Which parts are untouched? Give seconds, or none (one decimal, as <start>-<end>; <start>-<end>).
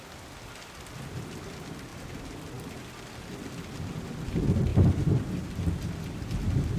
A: 0.0-4.7; 5.6-6.8